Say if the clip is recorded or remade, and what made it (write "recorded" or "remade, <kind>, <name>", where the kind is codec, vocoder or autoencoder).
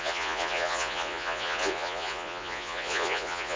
remade, vocoder, Vocos